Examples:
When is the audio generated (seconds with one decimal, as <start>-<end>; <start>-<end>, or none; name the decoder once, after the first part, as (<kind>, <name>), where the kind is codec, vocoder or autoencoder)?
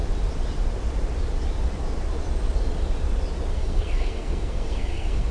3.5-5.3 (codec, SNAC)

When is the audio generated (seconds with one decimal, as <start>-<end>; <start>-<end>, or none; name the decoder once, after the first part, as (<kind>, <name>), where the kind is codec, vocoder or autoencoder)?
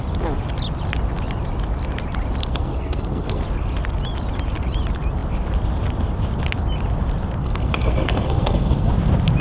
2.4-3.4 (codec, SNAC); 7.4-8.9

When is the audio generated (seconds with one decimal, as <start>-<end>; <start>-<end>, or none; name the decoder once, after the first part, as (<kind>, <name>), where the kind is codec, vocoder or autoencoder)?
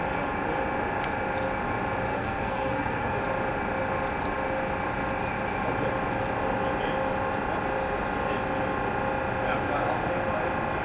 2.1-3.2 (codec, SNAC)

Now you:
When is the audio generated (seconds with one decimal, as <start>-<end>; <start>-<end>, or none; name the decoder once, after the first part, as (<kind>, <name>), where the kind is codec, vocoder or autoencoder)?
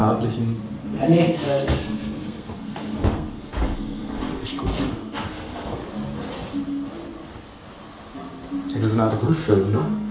0.8-5.8 (codec, SNAC); 9.1-10.1